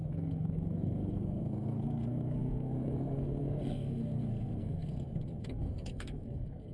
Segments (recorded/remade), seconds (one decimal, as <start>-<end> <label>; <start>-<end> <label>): 0.0-6.7 remade